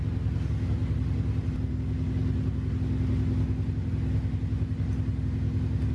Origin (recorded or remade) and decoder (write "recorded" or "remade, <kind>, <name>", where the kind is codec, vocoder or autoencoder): recorded